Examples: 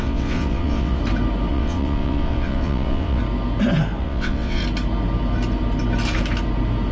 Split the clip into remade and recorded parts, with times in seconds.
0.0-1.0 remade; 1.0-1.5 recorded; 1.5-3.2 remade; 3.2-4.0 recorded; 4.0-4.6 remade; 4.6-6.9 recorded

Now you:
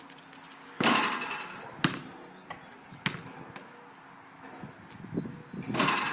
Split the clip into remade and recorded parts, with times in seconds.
0.0-0.5 recorded; 0.5-1.0 remade; 1.0-6.1 recorded

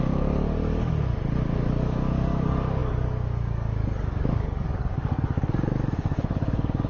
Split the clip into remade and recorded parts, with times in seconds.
0.0-1.1 remade; 1.1-1.7 recorded; 1.7-6.9 remade

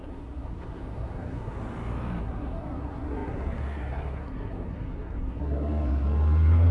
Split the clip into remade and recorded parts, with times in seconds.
0.0-1.6 remade; 1.6-2.2 recorded; 2.2-6.7 remade